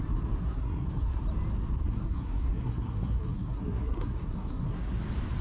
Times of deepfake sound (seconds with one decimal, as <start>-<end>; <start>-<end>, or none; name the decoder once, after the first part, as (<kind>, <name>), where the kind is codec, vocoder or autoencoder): 0.4-1.2 (codec, SNAC); 1.8-5.0